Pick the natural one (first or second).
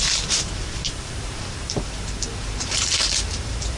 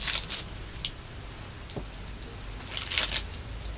second